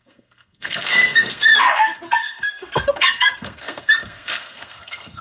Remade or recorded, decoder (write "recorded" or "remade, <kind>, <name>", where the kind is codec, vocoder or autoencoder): remade, codec, SNAC